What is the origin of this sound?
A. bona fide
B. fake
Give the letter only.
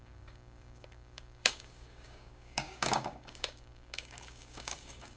B